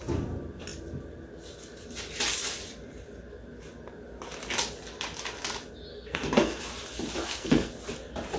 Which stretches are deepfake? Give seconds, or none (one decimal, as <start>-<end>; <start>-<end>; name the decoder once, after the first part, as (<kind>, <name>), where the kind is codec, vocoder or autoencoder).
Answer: 5.9-6.6 (codec, SNAC); 7.2-7.7